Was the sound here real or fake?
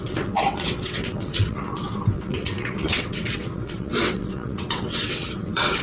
fake